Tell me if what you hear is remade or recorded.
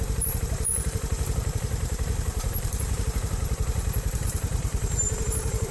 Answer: remade